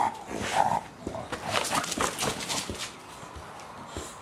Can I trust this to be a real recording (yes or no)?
yes